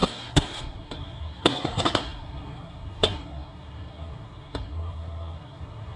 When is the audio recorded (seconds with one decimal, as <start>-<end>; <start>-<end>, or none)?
none